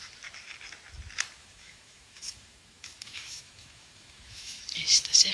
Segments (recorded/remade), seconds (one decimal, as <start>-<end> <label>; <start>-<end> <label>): 0.0-1.4 recorded; 1.4-4.6 remade; 4.6-5.3 recorded